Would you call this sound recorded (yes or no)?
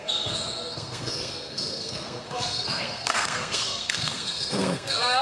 no